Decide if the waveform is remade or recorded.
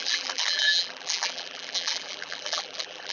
remade